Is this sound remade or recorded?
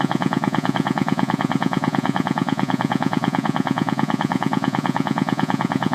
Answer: remade